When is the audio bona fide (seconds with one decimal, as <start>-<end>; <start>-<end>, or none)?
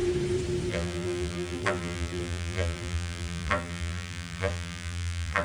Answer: 0.0-0.7